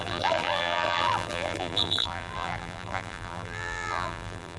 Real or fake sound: fake